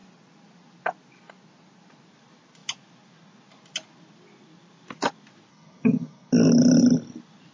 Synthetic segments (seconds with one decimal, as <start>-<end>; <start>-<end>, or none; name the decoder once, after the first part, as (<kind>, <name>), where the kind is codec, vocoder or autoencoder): 5.5-6.3 (codec, SNAC)

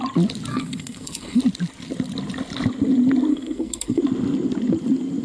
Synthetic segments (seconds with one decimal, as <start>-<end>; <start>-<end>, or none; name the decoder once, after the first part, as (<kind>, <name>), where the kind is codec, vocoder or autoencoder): 0.5-1.4 (codec, SNAC); 3.3-4.0

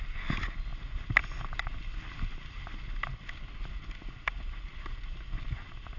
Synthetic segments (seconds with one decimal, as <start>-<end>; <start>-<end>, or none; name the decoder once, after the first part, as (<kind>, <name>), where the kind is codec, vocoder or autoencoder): none

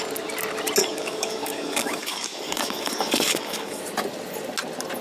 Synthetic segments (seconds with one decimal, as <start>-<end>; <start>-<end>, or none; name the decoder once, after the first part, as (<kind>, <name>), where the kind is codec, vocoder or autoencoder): 0.8-3.8 (codec, DAC)

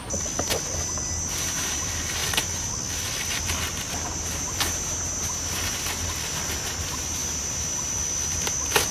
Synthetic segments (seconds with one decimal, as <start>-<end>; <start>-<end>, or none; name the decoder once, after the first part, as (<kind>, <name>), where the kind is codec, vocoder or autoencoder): none

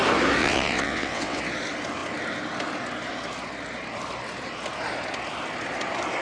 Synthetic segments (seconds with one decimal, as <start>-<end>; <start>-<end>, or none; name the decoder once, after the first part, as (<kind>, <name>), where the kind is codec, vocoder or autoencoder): 0.4-1.4 (vocoder, WaveNeXt)